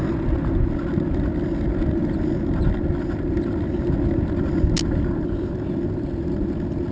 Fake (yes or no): no